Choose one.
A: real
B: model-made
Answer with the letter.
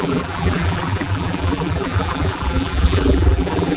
B